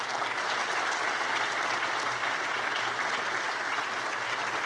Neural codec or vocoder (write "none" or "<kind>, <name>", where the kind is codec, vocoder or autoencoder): none